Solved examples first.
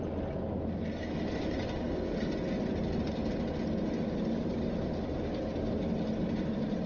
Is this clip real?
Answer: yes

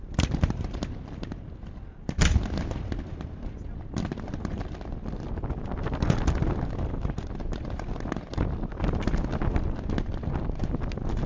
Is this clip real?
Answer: yes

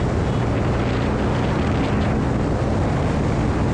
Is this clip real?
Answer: yes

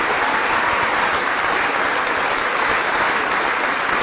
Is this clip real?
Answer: yes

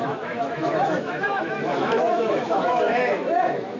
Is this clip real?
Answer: no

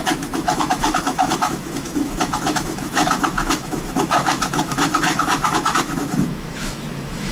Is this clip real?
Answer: no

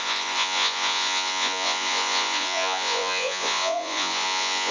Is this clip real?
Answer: no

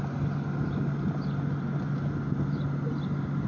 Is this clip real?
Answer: yes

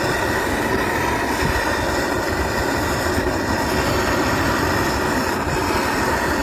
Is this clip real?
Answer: yes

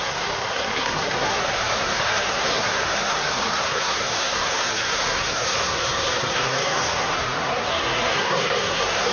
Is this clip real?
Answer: no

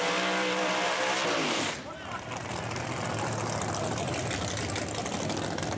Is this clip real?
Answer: no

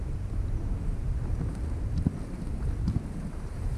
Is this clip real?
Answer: yes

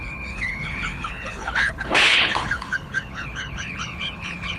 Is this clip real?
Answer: no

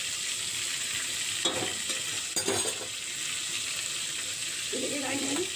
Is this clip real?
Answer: yes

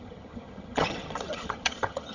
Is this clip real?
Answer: no